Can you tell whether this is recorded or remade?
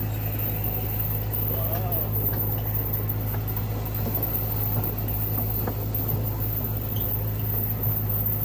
recorded